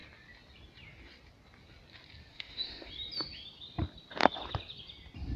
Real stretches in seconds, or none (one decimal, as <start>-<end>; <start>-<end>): 0.0-2.3; 2.9-5.4